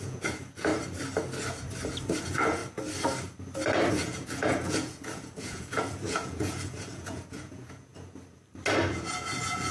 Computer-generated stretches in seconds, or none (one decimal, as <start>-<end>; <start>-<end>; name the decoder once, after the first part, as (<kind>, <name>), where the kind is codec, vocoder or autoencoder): 0.0-0.7 (vocoder, Vocos); 2.2-2.6; 3.9-7.9; 8.9-9.7